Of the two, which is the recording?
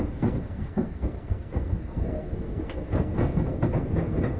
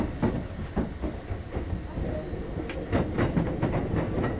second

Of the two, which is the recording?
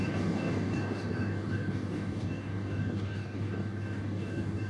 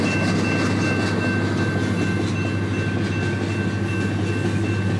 second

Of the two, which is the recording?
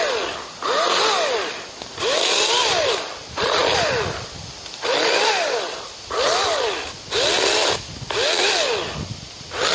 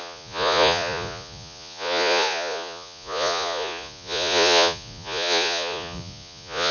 first